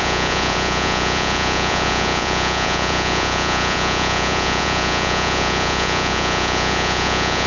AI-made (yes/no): yes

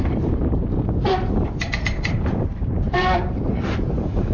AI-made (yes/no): yes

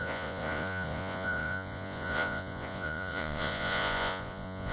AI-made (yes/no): yes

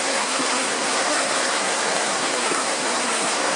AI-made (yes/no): yes